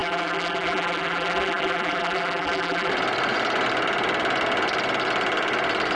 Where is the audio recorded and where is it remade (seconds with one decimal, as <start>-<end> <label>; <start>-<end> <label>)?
0.0-2.9 remade; 2.9-6.0 recorded